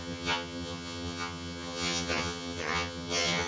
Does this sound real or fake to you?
fake